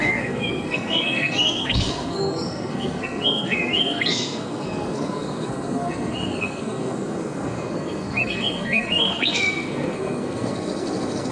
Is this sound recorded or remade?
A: remade